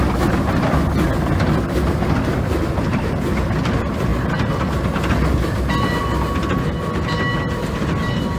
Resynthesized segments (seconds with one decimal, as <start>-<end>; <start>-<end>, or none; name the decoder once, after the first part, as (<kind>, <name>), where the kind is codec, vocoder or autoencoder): none